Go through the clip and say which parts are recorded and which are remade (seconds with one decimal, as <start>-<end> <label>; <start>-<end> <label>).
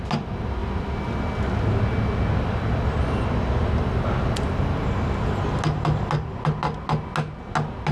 0.0-3.6 recorded; 3.6-4.6 remade; 4.6-7.9 recorded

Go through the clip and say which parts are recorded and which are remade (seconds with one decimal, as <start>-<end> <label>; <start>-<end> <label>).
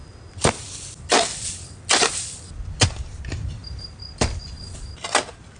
0.0-3.6 recorded; 3.6-4.4 remade; 4.4-5.6 recorded